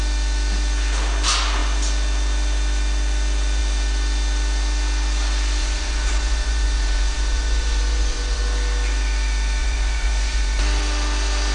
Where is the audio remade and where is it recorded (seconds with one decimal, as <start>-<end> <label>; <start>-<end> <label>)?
0.0-5.6 recorded; 5.6-8.4 remade; 8.4-9.6 recorded; 9.6-10.6 remade; 10.6-11.5 recorded